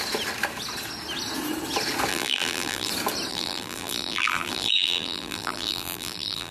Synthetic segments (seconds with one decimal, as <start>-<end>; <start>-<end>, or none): 2.1-2.9; 3.3-6.5